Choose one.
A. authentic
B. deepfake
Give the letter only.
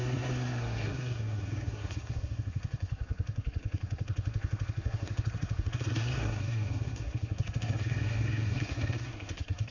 B